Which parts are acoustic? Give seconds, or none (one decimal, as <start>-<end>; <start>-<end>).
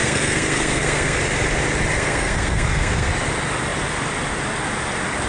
1.2-1.9; 3.1-5.3